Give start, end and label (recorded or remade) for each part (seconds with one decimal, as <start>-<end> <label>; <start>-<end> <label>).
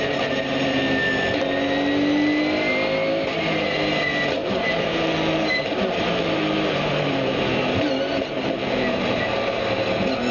0.0-4.4 recorded; 4.4-7.4 remade; 7.4-8.1 recorded; 8.1-9.6 remade; 9.6-10.3 recorded